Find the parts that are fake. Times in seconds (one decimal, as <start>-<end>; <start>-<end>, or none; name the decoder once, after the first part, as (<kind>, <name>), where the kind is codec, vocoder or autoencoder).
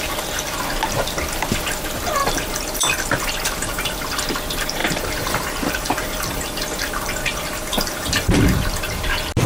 2.2-4.0 (vocoder, BigVGAN v2); 4.8-8.4